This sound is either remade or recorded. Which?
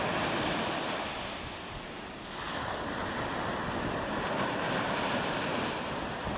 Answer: recorded